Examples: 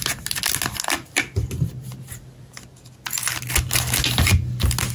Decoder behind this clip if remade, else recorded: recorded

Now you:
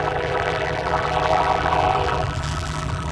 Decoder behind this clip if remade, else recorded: remade, vocoder, BigVGAN v2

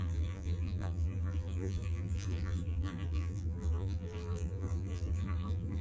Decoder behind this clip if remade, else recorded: remade, vocoder, BigVGAN v2